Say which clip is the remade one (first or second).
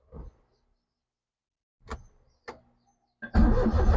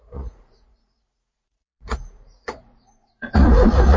second